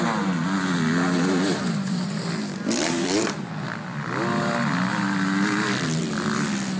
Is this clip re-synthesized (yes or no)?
no